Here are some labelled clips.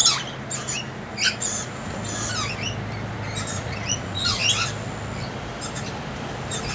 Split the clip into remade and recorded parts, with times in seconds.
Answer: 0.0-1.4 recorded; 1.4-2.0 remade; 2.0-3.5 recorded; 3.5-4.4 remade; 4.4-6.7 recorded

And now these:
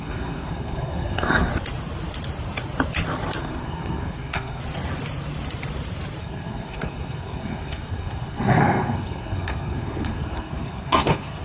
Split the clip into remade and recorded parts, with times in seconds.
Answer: 0.0-1.5 remade; 1.5-3.4 recorded; 3.4-4.6 remade; 4.6-6.2 recorded; 6.2-11.4 remade

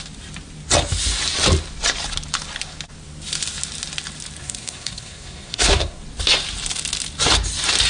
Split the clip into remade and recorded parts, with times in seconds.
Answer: 0.0-4.4 recorded; 4.4-6.0 remade; 6.0-7.9 recorded

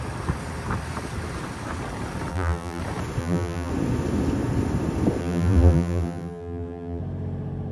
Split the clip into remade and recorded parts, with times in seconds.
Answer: 0.0-2.3 recorded; 2.3-2.8 remade; 2.8-3.2 recorded; 3.2-3.7 remade; 3.7-5.2 recorded; 5.2-7.0 remade; 7.0-7.7 recorded

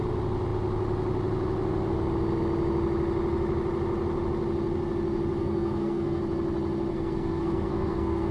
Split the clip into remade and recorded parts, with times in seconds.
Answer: 0.0-5.4 recorded; 5.4-6.2 remade; 6.2-6.9 recorded; 6.9-8.3 remade